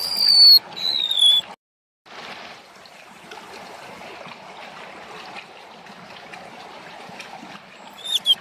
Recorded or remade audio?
recorded